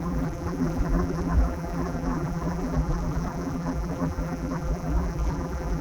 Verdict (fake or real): fake